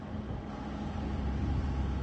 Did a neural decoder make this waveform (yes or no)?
no